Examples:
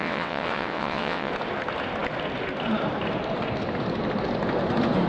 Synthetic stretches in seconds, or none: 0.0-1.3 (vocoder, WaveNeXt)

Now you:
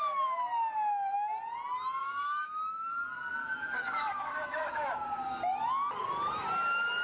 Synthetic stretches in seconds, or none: 2.0-2.9 (autoencoder, DAC-VAE); 3.4-5.4

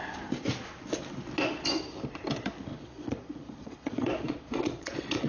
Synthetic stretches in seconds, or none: 2.7-5.3 (vocoder, Vocos)

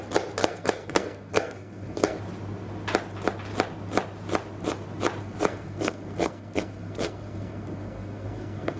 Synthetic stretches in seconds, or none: 0.4-2.2 (codec, SNAC); 5.2-8.8

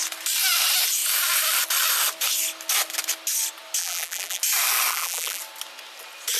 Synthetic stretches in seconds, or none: 3.8-4.4 (vocoder, BigVGAN v2); 4.9-5.4

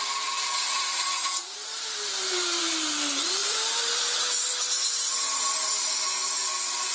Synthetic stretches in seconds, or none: 0.0-5.9 (vocoder, BigVGAN v2)

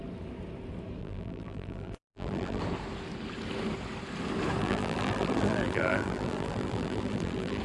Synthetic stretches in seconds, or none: 1.0-2.6 (vocoder, BigVGAN v2); 4.6-7.6